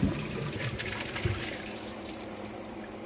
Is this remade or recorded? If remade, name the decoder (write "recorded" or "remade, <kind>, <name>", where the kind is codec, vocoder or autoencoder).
remade, vocoder, BigVGAN v2